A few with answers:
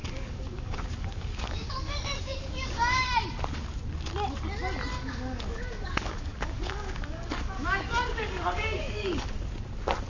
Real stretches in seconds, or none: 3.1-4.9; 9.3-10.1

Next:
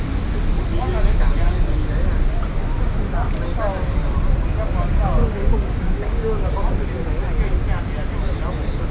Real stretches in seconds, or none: 0.0-5.2; 6.6-8.9